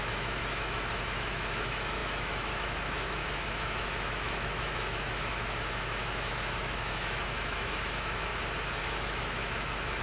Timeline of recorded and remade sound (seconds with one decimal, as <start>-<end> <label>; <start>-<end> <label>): 0.0-8.3 remade; 8.3-8.8 recorded; 8.8-10.0 remade